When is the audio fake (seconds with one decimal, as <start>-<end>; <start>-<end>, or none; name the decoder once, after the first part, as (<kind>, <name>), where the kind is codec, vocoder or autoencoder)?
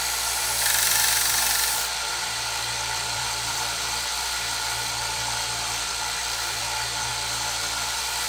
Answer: 2.1-6.6 (vocoder, BigVGAN v2); 7.1-8.3